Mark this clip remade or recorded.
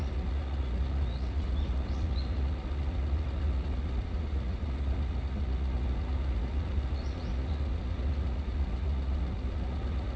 remade